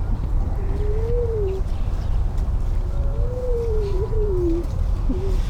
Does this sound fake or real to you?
real